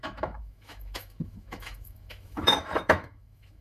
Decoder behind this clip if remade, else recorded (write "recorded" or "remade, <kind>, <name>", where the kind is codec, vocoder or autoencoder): remade, autoencoder, DAC-VAE